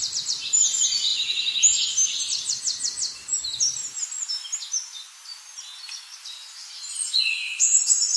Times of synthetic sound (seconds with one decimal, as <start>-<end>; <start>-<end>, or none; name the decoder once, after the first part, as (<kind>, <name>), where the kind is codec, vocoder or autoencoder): none